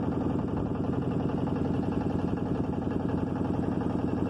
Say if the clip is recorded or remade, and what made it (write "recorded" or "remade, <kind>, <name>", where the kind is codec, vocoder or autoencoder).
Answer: recorded